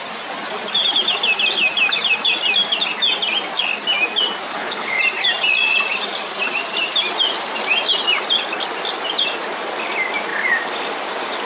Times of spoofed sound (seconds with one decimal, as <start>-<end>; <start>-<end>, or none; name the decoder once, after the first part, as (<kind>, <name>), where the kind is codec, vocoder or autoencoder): 4.5-5.0 (codec, HILCodec)